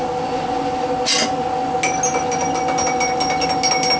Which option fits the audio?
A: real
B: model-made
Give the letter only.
A